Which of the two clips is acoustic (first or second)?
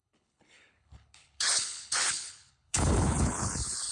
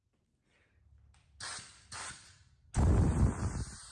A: second